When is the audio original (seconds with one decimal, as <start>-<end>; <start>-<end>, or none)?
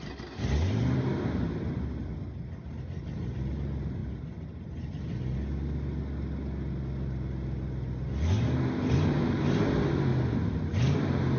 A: 0.0-11.4